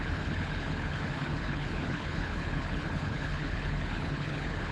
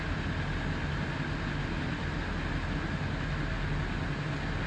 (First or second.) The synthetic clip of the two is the first